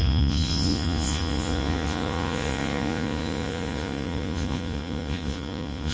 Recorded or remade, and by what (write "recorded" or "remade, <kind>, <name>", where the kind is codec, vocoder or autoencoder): remade, vocoder, Vocos